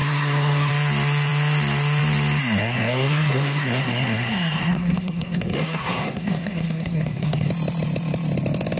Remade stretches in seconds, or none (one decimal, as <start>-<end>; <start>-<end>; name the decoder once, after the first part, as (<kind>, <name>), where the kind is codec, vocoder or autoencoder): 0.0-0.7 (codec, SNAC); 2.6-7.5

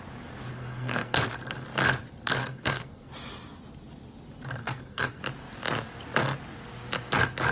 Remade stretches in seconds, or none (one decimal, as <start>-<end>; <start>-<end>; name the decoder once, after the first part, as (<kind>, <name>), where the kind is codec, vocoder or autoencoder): 0.5-1.2 (codec, SNAC); 2.4-3.1; 4.6-5.2

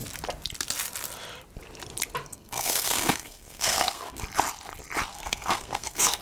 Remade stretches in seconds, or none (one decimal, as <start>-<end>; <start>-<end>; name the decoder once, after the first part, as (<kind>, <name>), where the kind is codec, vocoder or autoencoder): 2.3-4.2 (codec, SNAC); 5.1-6.2

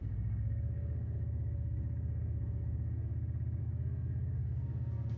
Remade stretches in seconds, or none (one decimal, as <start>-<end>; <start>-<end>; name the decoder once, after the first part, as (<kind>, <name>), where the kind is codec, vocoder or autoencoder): 0.0-3.1 (codec, SNAC); 3.6-5.2

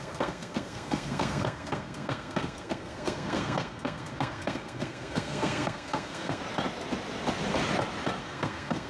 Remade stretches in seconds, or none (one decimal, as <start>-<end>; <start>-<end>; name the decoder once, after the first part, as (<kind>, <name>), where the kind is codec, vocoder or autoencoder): 0.0-6.4 (codec, SNAC); 8.2-8.9

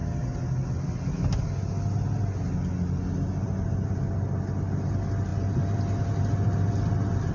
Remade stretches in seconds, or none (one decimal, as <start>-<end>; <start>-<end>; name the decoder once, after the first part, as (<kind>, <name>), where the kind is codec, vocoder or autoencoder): none

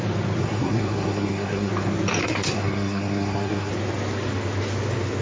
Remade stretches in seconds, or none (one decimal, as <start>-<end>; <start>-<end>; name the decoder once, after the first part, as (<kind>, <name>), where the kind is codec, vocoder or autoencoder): 0.4-1.7 (codec, SNAC); 2.2-3.7

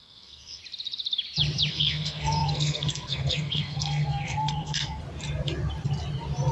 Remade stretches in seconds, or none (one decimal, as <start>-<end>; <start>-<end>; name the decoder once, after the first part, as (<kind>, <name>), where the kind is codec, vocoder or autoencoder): 0.0-0.6 (codec, SNAC); 1.7-5.0